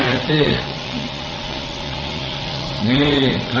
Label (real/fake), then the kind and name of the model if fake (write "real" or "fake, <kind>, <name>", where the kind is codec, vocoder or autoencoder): fake, vocoder, Vocos